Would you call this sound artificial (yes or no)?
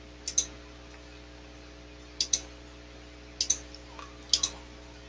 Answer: no